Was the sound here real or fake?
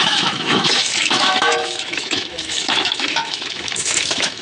fake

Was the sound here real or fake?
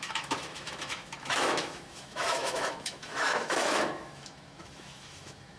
fake